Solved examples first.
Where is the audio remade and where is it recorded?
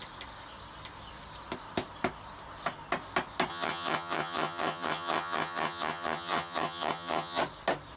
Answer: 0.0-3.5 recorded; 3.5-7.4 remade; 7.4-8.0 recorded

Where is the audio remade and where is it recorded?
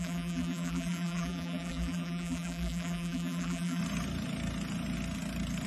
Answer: 0.0-3.8 remade; 3.8-5.7 recorded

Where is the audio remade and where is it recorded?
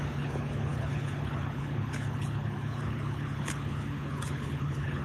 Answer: 0.0-5.0 remade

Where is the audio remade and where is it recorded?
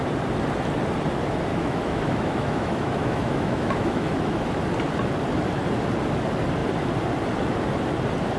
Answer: 0.0-1.5 recorded; 1.5-4.6 remade; 4.6-8.4 recorded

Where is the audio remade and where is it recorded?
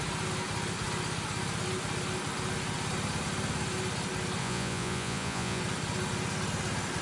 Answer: 0.0-4.4 recorded; 4.4-5.6 remade; 5.6-7.0 recorded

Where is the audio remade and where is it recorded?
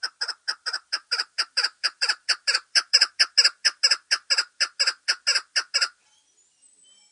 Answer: 0.0-1.0 recorded; 1.0-3.1 remade; 3.1-7.1 recorded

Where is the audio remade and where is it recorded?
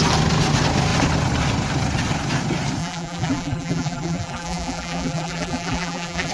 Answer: 0.0-2.8 recorded; 2.8-6.3 remade